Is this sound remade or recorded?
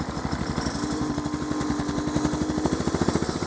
recorded